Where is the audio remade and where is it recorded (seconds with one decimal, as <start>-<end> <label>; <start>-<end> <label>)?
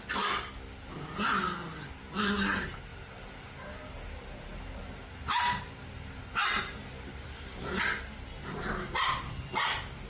0.0-2.9 recorded; 2.9-7.8 remade; 7.8-10.1 recorded